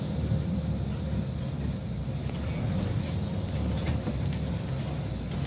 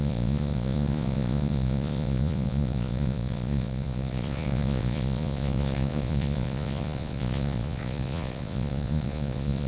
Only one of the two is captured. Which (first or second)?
first